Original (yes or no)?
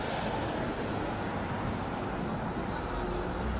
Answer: yes